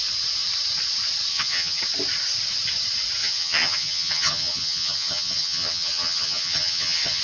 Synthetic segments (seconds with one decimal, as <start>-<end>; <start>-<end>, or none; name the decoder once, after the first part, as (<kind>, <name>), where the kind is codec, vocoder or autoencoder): 1.3-1.8 (vocoder, HiFi-GAN); 3.2-7.2